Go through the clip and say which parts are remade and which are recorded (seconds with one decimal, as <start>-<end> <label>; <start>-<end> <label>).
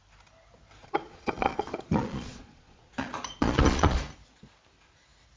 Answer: 0.0-0.8 recorded; 0.8-4.0 remade; 4.0-5.4 recorded